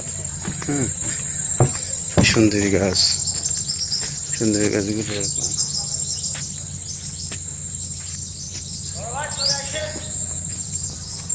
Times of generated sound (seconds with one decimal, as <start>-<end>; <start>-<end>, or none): 9.8-11.3